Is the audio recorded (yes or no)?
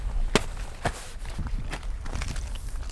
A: yes